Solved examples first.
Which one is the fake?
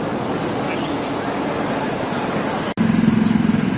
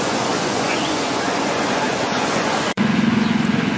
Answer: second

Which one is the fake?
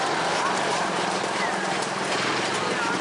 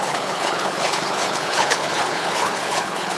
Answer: second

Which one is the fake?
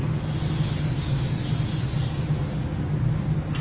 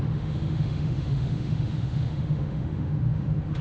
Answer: second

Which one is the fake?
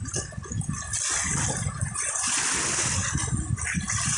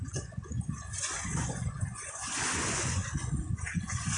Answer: second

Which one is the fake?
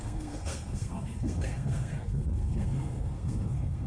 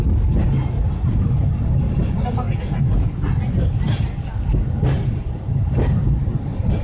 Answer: first